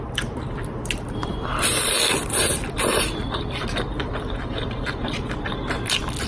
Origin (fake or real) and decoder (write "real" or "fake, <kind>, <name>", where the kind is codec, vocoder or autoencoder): fake, vocoder, BigVGAN v2